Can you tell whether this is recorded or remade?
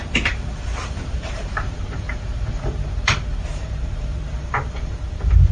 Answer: remade